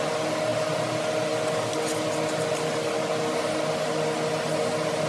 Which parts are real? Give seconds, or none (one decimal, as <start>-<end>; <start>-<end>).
0.0-5.1